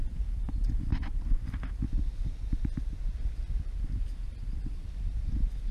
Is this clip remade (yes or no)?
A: no